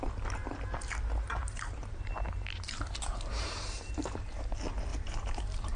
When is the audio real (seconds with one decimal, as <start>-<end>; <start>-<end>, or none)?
0.0-1.4; 4.2-4.9